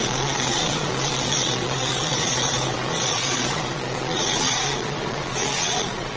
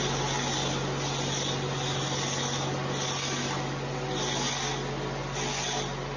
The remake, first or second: first